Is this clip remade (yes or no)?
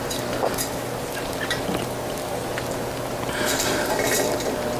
no